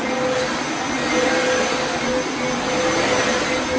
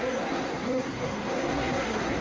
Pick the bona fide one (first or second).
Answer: first